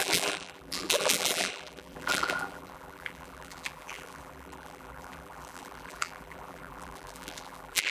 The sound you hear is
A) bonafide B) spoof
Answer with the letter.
B